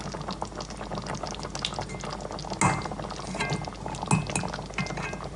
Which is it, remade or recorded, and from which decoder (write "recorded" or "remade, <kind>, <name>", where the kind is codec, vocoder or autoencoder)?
recorded